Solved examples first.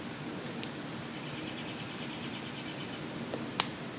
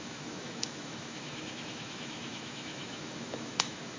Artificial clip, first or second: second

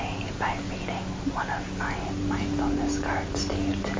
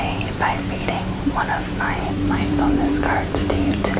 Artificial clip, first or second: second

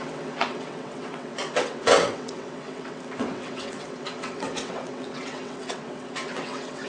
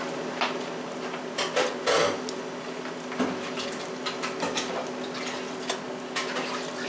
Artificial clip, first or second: first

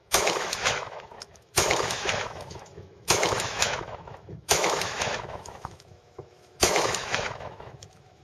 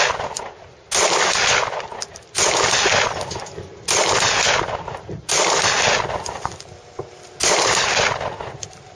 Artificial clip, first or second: first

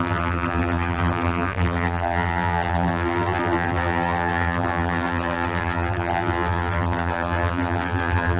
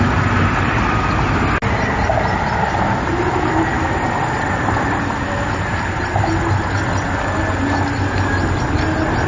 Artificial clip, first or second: first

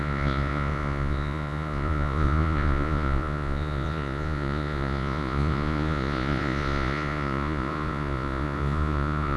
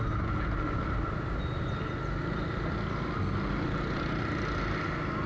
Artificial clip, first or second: first